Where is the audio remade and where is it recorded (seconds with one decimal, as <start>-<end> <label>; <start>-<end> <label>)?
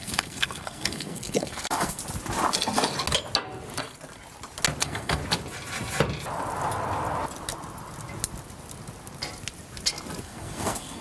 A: 0.0-2.0 remade; 2.0-4.8 recorded; 4.8-5.2 remade; 5.2-10.2 recorded; 10.2-11.0 remade